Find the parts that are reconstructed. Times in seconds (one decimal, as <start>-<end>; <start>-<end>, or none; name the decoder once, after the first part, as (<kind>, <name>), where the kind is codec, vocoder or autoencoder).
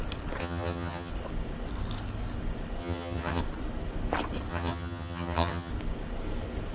0.4-1.1 (vocoder, HiFi-GAN); 2.8-3.4; 4.5-5.7